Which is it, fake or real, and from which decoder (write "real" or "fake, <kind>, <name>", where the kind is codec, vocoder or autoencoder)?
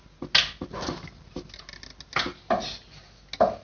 real